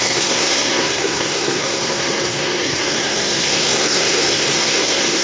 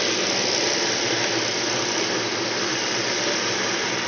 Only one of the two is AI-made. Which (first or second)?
first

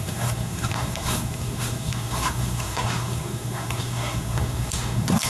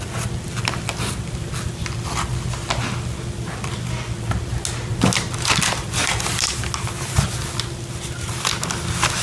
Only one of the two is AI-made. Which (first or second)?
first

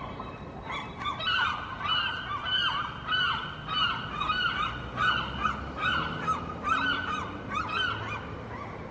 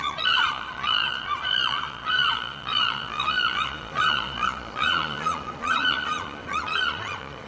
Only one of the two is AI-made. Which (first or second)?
second